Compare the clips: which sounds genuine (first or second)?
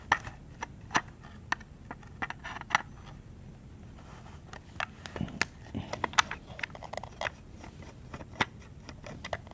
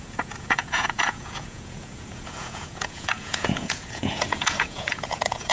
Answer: first